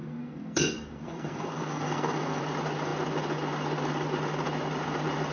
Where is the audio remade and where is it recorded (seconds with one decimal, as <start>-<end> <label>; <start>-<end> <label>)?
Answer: 0.0-2.4 remade; 2.4-5.3 recorded